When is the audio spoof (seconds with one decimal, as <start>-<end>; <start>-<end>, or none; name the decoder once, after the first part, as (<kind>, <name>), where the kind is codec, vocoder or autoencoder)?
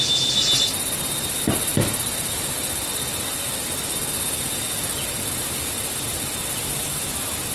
none